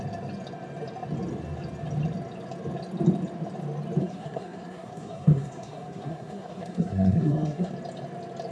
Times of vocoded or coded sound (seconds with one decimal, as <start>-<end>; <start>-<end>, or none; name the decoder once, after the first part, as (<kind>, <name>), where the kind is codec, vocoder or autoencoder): 4.0-7.7 (codec, SNAC)